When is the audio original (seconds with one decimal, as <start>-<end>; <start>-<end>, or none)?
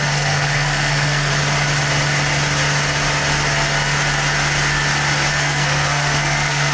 1.3-5.3